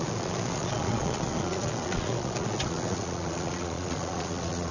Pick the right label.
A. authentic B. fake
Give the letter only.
B